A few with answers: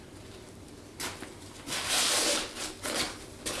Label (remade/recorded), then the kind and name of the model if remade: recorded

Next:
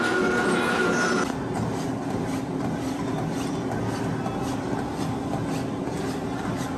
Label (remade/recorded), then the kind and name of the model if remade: recorded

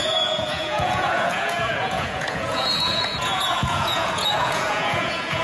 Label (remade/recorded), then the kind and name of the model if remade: remade, vocoder, Vocos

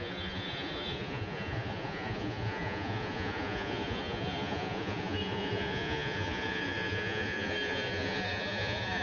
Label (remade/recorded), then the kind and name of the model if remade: remade, vocoder, Vocos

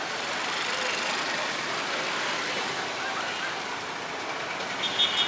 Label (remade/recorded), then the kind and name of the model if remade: recorded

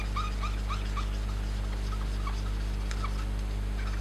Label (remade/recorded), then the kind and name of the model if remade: recorded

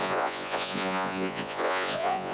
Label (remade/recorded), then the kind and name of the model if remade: remade, vocoder, Vocos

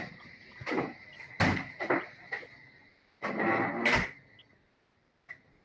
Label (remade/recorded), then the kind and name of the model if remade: recorded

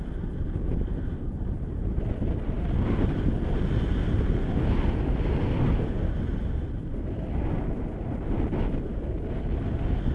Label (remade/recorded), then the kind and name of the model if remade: recorded